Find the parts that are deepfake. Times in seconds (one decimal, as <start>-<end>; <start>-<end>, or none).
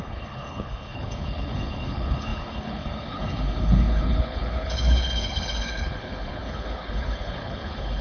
0.0-8.0